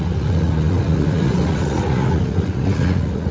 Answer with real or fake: fake